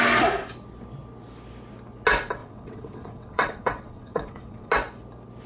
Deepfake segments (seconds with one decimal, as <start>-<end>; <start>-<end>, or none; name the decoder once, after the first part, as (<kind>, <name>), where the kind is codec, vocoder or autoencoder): 2.4-4.7 (vocoder, WaveNeXt)